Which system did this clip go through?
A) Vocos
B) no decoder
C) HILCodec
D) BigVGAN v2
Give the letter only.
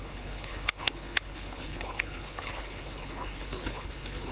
C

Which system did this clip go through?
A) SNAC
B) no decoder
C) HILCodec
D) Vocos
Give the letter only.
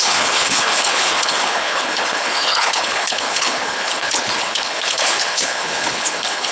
C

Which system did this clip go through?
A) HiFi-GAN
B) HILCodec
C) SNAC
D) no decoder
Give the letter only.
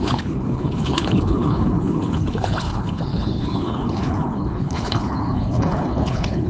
B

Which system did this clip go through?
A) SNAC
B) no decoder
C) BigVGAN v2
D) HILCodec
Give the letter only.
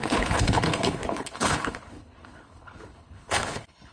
D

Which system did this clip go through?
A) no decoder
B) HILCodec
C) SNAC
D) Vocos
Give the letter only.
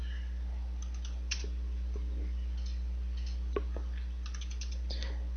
A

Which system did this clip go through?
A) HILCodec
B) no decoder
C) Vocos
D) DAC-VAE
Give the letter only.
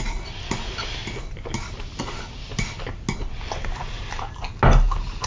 B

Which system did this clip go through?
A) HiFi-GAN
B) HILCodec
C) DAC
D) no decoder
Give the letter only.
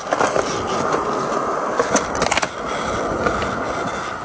D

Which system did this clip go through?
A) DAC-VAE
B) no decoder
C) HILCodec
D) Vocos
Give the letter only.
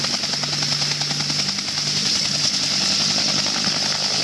B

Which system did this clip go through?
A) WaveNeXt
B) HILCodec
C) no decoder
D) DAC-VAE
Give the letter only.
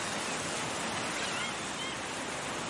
C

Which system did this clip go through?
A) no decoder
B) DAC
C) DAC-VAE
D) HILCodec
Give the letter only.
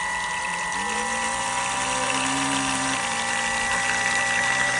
A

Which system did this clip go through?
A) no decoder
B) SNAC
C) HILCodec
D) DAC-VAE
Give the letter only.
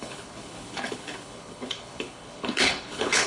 C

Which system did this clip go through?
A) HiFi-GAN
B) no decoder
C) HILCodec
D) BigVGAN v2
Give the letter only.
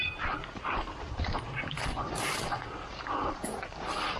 B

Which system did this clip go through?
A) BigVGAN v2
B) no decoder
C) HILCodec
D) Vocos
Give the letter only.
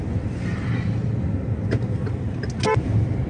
B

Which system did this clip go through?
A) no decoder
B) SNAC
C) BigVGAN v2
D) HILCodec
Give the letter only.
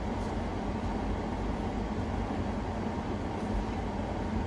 A